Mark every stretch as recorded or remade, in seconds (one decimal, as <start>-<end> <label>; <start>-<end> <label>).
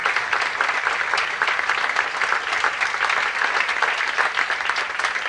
0.0-5.3 recorded